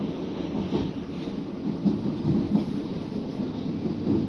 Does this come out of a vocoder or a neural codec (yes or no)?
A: no